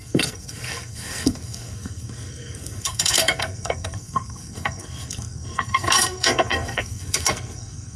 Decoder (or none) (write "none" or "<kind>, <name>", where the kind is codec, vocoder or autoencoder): codec, SNAC